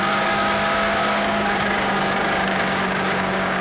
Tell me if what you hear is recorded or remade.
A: remade